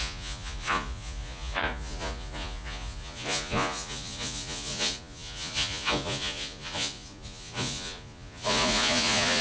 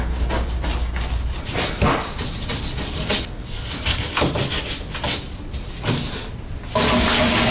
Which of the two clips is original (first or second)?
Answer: second